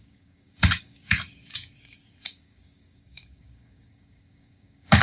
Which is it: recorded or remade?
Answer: remade